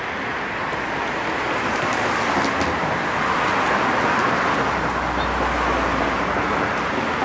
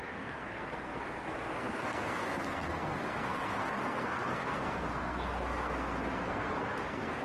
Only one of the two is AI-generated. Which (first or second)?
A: second